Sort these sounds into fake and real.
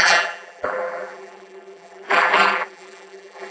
fake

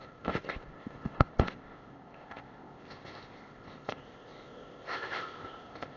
fake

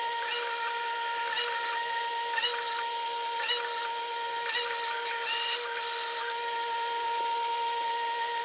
real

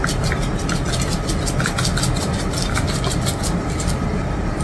real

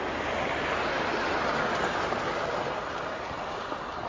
real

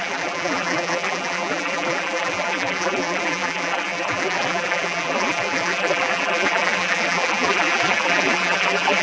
fake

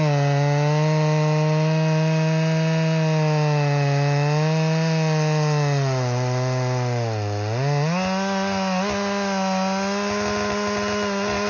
real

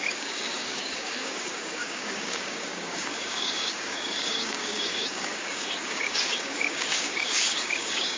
fake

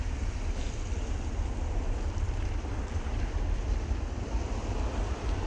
fake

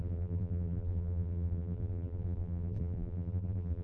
fake